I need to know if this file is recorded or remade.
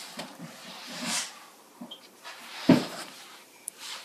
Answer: remade